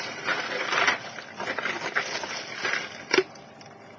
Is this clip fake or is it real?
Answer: real